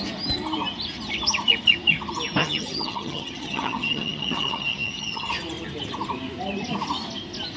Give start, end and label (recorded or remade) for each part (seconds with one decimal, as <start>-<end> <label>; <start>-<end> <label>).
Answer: 0.0-2.4 recorded; 2.4-5.3 remade; 5.3-7.6 recorded

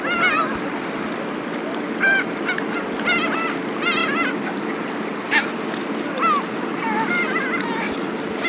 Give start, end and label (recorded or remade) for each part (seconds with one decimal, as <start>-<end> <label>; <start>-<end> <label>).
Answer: 0.0-8.5 recorded